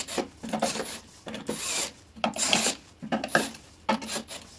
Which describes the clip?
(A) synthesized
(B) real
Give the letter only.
B